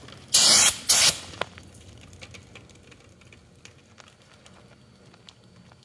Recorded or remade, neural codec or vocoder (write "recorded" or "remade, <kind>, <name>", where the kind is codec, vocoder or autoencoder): recorded